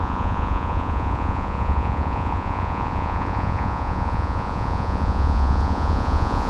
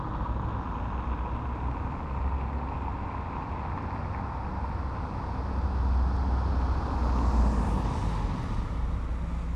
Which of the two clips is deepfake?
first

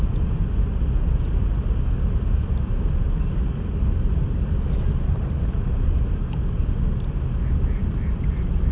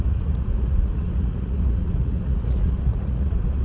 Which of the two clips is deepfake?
second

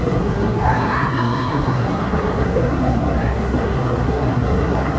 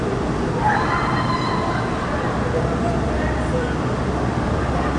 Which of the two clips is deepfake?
first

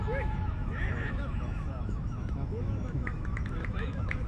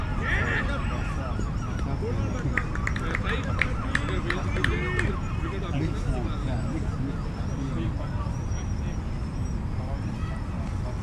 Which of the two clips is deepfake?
first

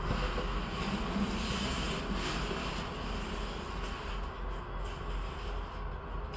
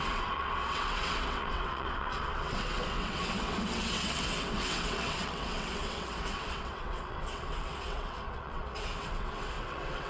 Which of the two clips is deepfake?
second